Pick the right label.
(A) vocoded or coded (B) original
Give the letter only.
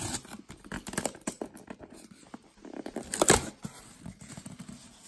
B